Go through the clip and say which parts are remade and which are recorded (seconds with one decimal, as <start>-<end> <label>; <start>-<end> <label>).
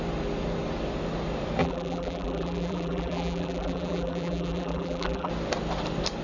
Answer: 0.0-1.6 recorded; 1.6-5.3 remade; 5.3-6.2 recorded